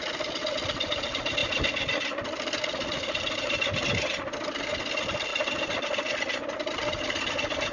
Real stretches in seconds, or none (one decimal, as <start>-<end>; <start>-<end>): 0.0-7.7